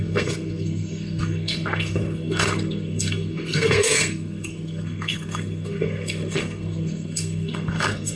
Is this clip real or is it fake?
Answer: fake